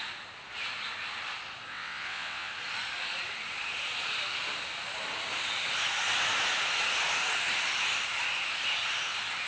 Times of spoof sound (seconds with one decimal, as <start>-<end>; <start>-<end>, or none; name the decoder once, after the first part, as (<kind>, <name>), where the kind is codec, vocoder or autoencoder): 1.7-2.5 (vocoder, WaveNeXt)